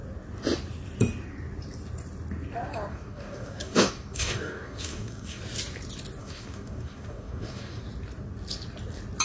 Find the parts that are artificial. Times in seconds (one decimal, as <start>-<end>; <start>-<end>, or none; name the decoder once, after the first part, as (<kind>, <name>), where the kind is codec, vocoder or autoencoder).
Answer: 2.9-5.4 (codec, DAC); 6.2-7.8